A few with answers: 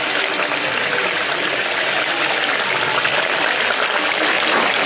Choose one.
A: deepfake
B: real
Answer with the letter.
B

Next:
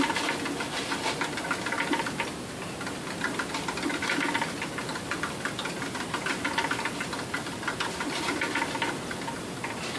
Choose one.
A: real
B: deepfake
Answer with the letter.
A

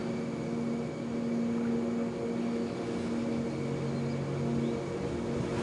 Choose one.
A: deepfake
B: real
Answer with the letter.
B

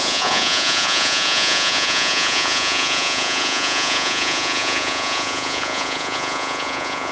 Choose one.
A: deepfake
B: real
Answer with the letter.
A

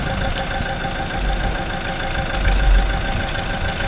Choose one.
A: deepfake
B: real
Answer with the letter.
B